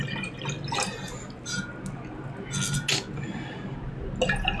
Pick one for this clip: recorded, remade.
recorded